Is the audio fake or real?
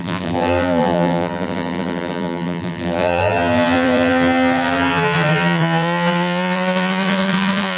fake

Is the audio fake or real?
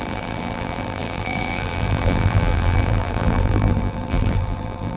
fake